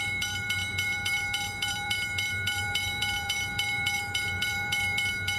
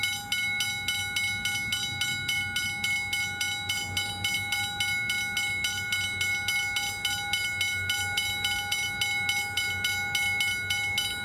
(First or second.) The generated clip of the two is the first